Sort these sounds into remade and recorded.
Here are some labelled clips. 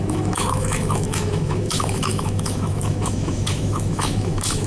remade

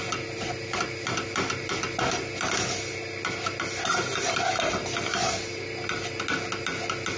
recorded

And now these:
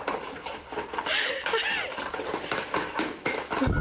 recorded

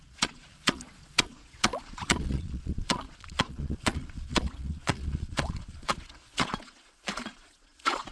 remade